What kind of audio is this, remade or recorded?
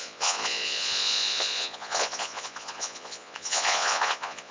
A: remade